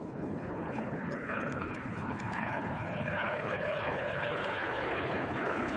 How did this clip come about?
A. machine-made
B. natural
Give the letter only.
A